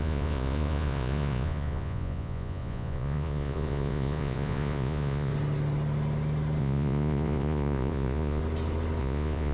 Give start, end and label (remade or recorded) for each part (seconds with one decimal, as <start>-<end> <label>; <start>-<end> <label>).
0.0-5.3 remade; 5.3-6.6 recorded; 6.6-8.4 remade; 8.4-9.0 recorded; 9.0-9.5 remade